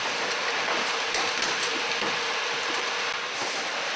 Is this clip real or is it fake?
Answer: real